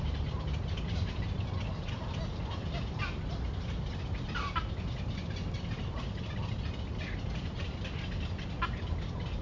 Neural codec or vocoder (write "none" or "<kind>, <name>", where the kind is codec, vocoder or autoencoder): none